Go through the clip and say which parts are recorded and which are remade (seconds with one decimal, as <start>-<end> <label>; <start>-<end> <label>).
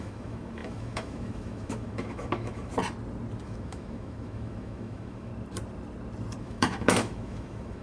0.0-2.7 remade; 2.7-3.4 recorded; 3.4-5.3 remade; 5.3-6.4 recorded; 6.4-7.8 remade